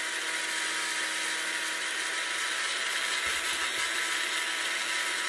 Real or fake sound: real